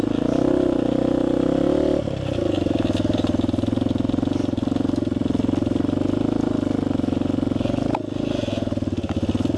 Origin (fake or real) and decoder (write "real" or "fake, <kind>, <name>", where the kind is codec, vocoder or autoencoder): real